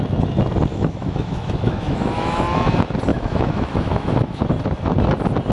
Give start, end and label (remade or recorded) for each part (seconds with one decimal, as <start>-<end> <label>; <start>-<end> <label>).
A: 0.0-0.7 recorded; 0.7-2.4 remade; 2.4-3.1 recorded; 3.1-4.4 remade; 4.4-5.5 recorded